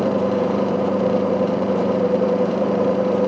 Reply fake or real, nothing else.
fake